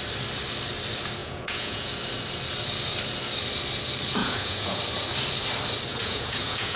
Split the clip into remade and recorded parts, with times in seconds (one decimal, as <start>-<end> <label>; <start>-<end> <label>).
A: 0.0-1.2 recorded; 1.2-1.9 remade; 1.9-4.2 recorded; 4.2-4.8 remade; 4.8-5.9 recorded; 5.9-6.8 remade